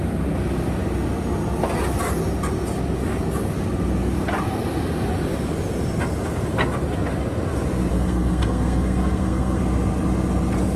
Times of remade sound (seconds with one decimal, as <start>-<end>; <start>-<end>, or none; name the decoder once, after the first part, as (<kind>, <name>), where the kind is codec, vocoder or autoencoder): 7.9-9.6 (codec, SNAC)